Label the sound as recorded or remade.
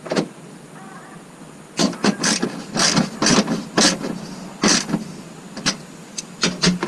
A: recorded